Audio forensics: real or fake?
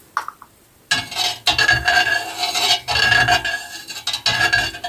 real